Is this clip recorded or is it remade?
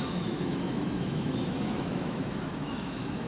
remade